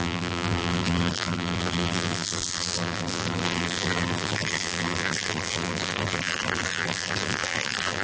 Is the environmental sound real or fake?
fake